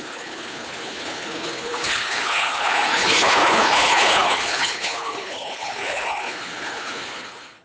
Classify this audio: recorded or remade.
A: remade